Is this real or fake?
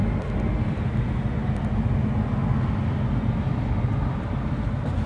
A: real